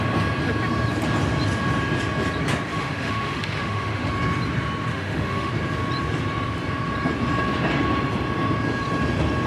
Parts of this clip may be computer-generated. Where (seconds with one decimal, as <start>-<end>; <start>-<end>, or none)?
2.7-4.1; 4.9-5.5